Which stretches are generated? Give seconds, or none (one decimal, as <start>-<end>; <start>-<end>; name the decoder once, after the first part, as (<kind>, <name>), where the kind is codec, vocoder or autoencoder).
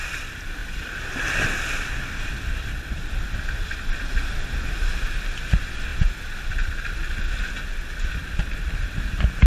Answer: 0.6-3.1 (vocoder, BigVGAN v2); 8.2-9.1